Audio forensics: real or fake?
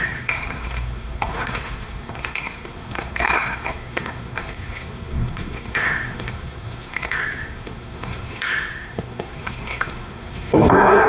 fake